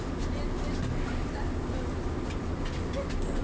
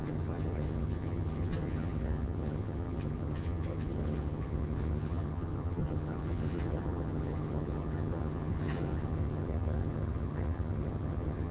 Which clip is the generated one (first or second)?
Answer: second